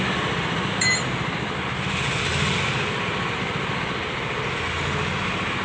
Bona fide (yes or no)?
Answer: yes